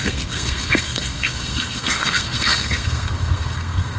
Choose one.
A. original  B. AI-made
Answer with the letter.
B